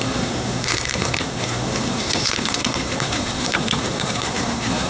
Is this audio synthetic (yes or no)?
yes